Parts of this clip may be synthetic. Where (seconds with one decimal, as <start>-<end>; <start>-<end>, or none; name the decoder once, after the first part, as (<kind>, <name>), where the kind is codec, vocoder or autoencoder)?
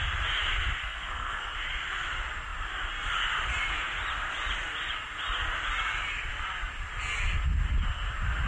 0.8-1.5 (codec, SNAC)